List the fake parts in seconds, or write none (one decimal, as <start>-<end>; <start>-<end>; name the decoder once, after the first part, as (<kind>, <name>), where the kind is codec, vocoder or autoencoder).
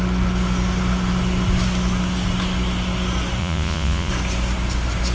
3.4-4.1 (vocoder, Vocos)